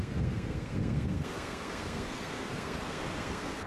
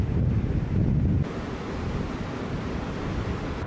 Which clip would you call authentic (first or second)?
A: second